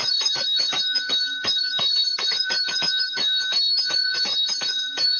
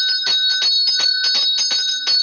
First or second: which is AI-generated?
first